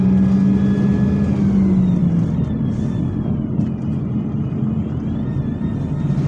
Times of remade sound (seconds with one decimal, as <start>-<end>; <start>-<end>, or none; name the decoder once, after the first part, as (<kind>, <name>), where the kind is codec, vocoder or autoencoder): none